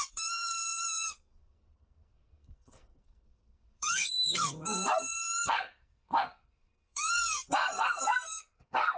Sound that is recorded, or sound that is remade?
remade